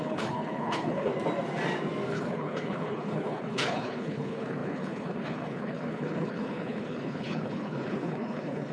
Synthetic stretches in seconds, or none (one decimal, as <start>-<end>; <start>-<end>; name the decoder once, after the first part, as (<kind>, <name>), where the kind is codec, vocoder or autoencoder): 0.0-1.1 (codec, HILCodec); 2.1-8.7